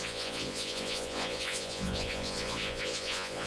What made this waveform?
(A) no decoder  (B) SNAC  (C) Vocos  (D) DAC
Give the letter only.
C